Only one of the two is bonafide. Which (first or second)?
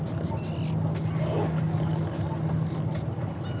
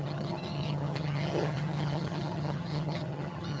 first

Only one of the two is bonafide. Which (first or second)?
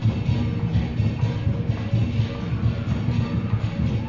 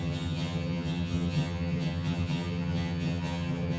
first